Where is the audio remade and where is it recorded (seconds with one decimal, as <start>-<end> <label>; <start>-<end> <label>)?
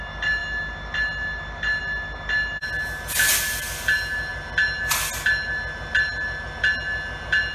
0.0-7.5 recorded